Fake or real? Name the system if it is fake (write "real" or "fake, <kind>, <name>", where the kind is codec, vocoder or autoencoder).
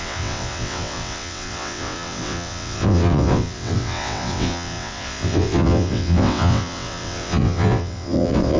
fake, vocoder, WaveNeXt